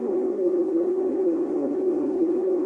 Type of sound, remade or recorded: remade